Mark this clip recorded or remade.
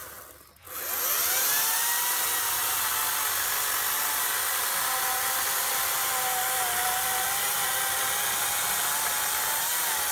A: recorded